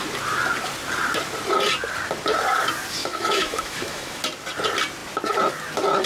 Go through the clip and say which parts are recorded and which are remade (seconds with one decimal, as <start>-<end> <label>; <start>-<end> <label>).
0.0-3.0 recorded; 3.0-4.2 remade; 4.2-6.1 recorded